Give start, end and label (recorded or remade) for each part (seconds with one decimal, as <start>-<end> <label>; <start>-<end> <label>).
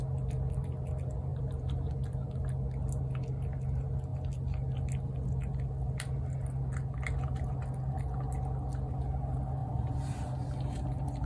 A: 0.0-1.3 recorded; 1.3-1.9 remade; 1.9-9.6 recorded; 9.6-11.3 remade